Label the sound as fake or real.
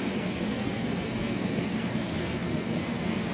fake